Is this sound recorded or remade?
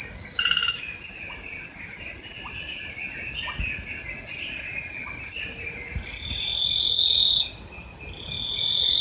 recorded